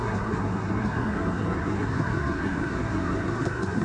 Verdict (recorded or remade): remade